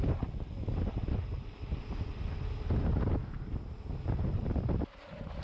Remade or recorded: recorded